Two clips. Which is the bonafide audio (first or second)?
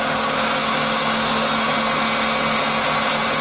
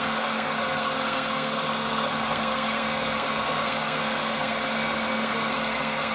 first